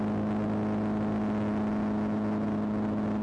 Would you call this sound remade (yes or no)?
no